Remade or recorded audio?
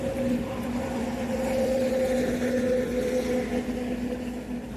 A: recorded